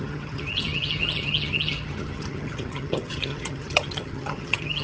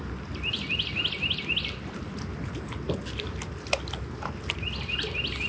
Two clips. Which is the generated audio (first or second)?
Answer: first